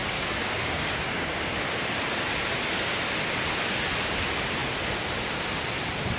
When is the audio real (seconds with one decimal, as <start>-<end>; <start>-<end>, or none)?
1.4-6.2